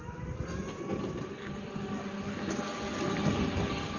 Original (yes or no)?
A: yes